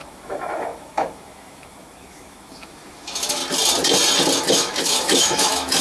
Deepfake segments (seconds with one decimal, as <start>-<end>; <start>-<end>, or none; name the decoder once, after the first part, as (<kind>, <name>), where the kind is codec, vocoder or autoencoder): 0.0-3.4 (autoencoder, DAC-VAE); 4.5-5.8

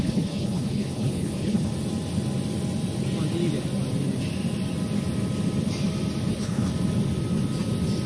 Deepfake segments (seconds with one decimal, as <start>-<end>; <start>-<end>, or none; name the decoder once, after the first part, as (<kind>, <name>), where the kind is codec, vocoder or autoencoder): 0.0-1.7 (codec, HILCodec); 6.3-6.7

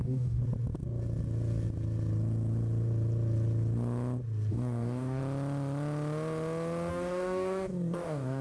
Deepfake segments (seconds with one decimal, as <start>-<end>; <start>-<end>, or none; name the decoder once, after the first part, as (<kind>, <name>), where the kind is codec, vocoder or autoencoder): 0.0-0.4 (codec, DAC); 4.5-5.2; 6.9-8.4

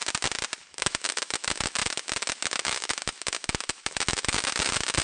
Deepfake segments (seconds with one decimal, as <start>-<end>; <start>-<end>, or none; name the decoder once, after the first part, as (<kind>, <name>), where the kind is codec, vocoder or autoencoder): 0.7-5.0 (autoencoder, DAC-VAE)